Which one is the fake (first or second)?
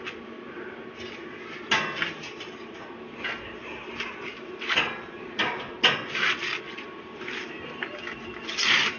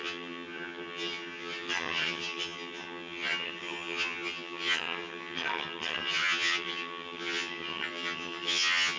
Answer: second